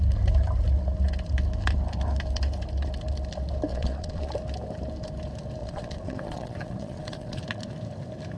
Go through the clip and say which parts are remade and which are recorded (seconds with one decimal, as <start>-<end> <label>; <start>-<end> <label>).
0.0-3.7 recorded; 3.7-4.3 remade; 4.3-5.6 recorded; 5.6-7.4 remade; 7.4-8.4 recorded